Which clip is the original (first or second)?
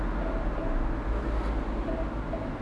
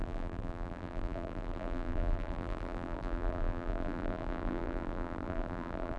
first